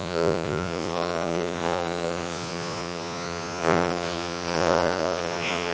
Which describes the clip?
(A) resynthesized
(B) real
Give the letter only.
A